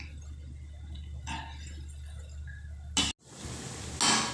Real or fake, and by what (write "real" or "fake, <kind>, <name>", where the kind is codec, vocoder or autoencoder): real